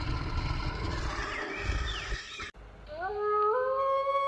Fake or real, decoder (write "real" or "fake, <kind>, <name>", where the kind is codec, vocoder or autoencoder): real